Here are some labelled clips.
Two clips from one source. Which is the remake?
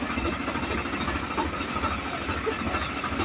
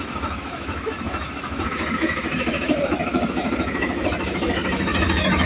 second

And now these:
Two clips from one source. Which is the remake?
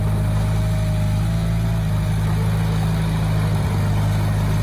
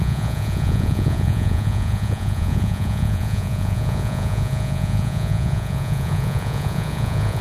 second